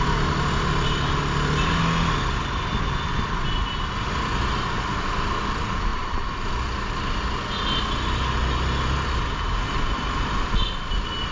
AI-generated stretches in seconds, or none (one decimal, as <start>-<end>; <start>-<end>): none